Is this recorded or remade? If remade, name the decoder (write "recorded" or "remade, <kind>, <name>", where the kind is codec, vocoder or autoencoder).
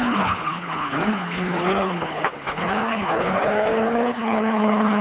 remade, codec, HILCodec